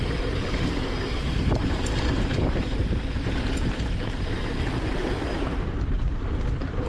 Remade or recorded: remade